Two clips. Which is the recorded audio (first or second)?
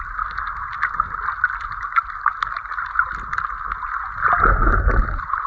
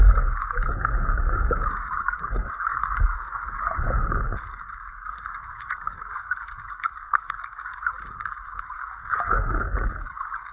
first